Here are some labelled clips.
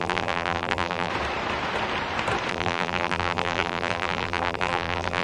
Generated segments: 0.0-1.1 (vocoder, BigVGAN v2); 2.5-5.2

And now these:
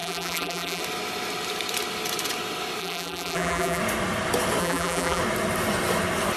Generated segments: 0.0-0.8 (vocoder, BigVGAN v2); 2.8-3.8; 4.6-5.2

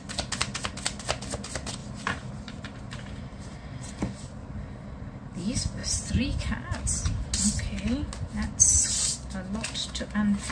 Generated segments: 1.8-3.5 (vocoder, BigVGAN v2); 5.8-6.4

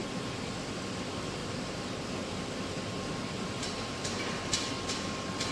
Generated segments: 1.4-4.7 (vocoder, BigVGAN v2)